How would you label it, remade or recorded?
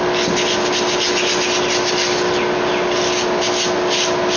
recorded